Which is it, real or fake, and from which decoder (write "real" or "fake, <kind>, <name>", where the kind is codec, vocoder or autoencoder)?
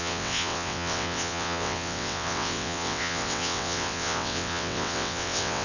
fake, vocoder, WaveNeXt